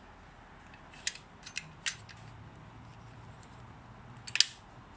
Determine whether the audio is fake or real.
real